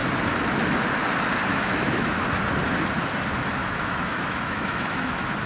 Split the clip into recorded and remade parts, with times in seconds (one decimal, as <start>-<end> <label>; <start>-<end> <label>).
0.0-1.5 recorded; 1.5-2.1 remade; 2.1-3.6 recorded; 3.6-5.1 remade; 5.1-5.5 recorded